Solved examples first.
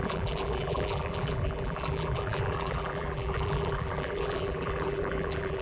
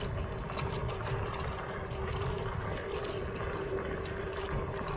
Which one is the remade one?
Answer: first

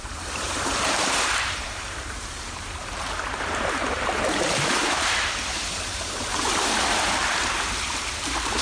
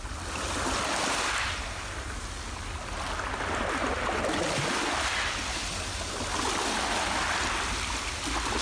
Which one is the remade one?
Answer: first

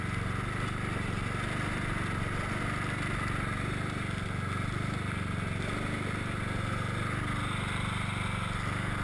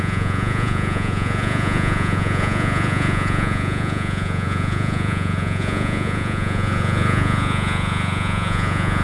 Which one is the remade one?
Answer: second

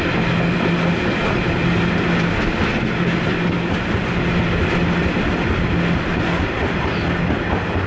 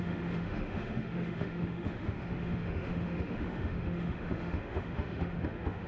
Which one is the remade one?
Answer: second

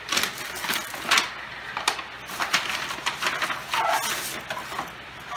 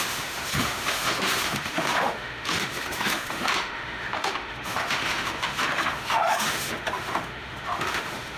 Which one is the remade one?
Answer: second